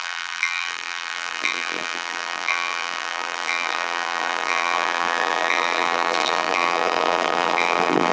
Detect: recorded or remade remade